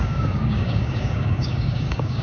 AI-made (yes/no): yes